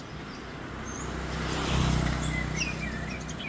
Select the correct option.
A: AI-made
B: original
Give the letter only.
B